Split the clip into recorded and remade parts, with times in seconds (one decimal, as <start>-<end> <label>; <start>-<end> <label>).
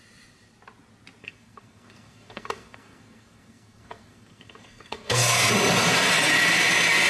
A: 0.0-1.2 recorded; 1.2-5.5 remade; 5.5-7.1 recorded